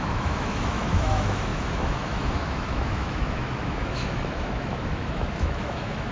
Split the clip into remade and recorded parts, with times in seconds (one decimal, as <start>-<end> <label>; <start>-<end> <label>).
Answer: 0.0-6.1 remade